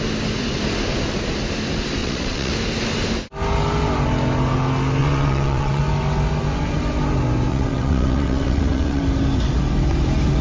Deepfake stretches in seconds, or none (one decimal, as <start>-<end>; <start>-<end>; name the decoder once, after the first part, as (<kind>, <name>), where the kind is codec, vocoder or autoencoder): 2.0-2.5 (vocoder, WaveNeXt); 5.0-5.8; 7.5-9.0